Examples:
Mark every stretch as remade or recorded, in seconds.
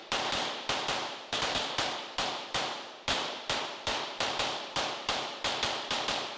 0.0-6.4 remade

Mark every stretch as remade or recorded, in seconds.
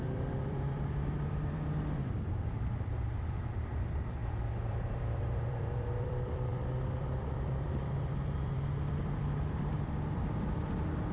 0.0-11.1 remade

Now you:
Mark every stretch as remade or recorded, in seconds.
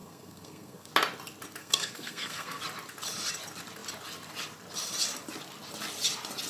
0.0-0.9 remade; 0.9-1.6 recorded; 1.6-2.6 remade; 2.6-6.5 recorded